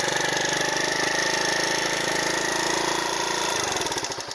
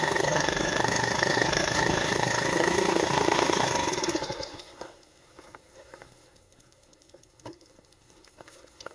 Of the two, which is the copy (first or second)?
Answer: second